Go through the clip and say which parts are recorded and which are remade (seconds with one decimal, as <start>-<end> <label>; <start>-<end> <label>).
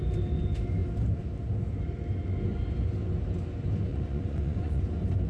0.0-3.9 recorded; 3.9-4.8 remade; 4.8-5.3 recorded